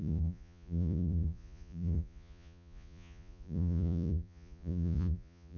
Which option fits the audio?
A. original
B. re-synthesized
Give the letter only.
B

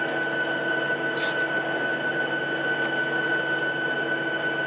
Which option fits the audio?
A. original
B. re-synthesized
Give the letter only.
A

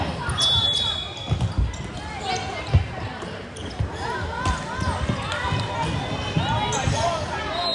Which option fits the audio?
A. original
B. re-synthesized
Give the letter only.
A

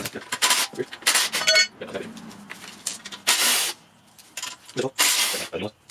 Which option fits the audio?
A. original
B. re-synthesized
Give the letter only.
A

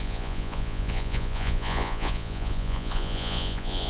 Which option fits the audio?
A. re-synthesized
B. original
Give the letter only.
A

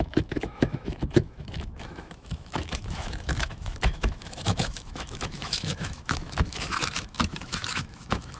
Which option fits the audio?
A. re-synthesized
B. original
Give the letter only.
A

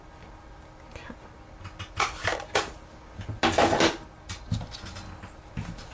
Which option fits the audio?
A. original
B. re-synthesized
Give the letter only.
A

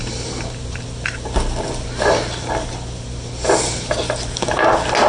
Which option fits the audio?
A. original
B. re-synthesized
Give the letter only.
A